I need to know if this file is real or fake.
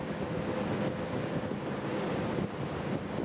real